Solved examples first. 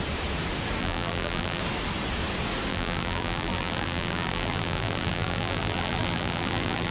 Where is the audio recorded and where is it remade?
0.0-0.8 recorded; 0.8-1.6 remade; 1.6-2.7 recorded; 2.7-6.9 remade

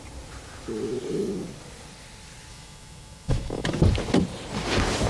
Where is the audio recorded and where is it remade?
0.0-2.5 recorded; 2.5-3.7 remade; 3.7-5.1 recorded

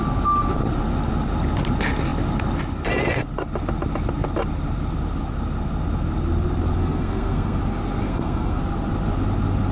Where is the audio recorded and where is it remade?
0.0-6.8 recorded; 6.8-7.6 remade; 7.6-8.0 recorded; 8.0-8.6 remade; 8.6-9.7 recorded

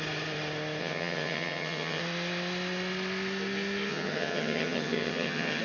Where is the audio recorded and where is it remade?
0.0-0.8 recorded; 0.8-2.0 remade; 2.0-3.9 recorded; 3.9-5.6 remade

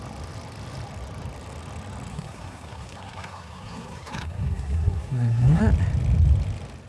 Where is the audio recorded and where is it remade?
0.0-2.1 recorded; 2.1-5.6 remade; 5.6-6.9 recorded

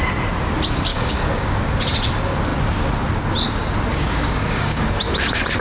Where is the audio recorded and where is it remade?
0.0-0.9 recorded; 0.9-1.8 remade; 1.8-3.9 recorded; 3.9-5.0 remade; 5.0-5.6 recorded

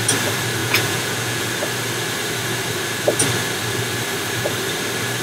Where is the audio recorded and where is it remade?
0.0-0.6 recorded; 0.6-1.5 remade; 1.5-5.2 recorded